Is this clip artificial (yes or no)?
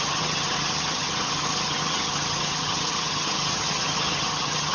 yes